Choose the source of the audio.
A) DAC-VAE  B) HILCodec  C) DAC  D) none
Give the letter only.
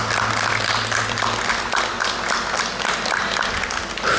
D